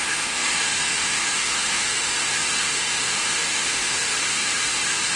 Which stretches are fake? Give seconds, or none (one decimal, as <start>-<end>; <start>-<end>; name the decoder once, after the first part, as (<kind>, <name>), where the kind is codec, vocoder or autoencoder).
0.0-5.2 (autoencoder, DAC-VAE)